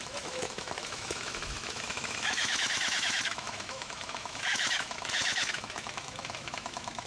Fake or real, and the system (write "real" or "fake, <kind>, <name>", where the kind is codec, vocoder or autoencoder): fake, autoencoder, DAC-VAE